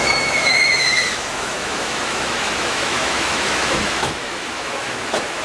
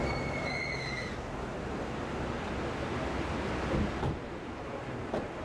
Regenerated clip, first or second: first